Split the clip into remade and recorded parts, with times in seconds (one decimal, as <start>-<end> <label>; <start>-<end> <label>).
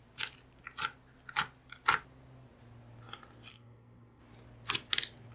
0.0-3.5 recorded; 3.5-4.2 remade; 4.2-5.3 recorded